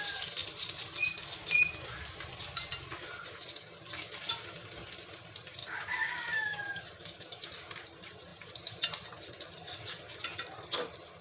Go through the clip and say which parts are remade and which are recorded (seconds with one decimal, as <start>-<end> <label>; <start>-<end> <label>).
0.0-5.6 recorded; 5.6-6.8 remade; 6.8-11.2 recorded

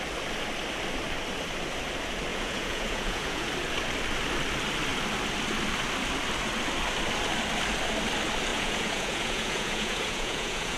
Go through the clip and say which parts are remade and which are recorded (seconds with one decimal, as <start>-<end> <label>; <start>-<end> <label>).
0.0-2.3 recorded; 2.3-3.5 remade; 3.5-8.5 recorded; 8.5-10.8 remade

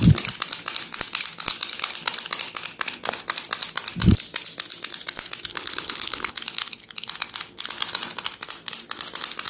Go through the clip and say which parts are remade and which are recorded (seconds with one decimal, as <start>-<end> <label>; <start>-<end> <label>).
0.0-5.5 recorded; 5.5-6.3 remade; 6.3-9.5 recorded